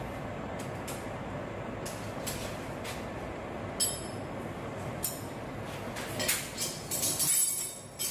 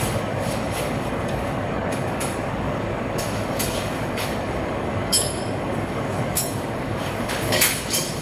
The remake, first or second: second